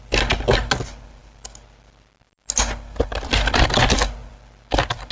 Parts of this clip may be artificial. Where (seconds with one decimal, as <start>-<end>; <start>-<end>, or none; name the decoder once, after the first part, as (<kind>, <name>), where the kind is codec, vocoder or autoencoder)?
none